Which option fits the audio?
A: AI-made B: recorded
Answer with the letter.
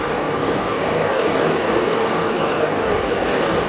A